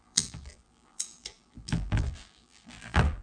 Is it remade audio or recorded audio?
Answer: remade